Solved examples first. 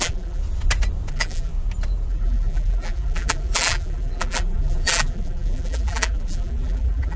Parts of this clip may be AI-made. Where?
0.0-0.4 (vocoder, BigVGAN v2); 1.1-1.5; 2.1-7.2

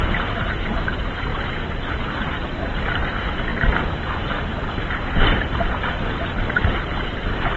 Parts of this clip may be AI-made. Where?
0.0-7.6 (vocoder, BigVGAN v2)

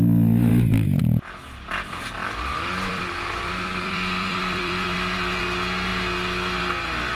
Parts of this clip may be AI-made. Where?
0.5-1.0 (vocoder, BigVGAN v2); 2.2-5.4

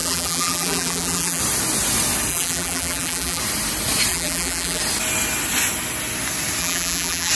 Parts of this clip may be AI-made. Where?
0.0-1.4 (vocoder, BigVGAN v2); 2.3-3.4; 4.1-4.8; 6.6-7.3

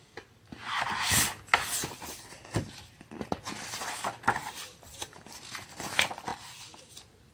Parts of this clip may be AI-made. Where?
none

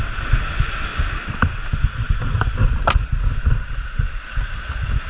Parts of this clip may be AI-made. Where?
none

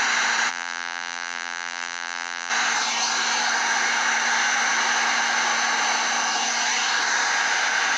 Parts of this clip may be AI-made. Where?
0.5-2.5 (vocoder, BigVGAN v2)